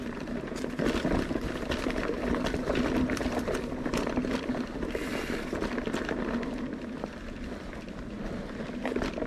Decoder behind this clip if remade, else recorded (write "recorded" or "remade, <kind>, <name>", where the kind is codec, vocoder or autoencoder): recorded